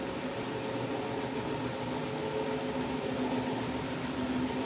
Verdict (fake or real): real